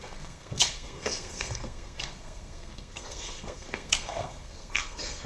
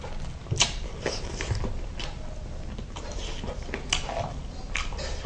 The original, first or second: second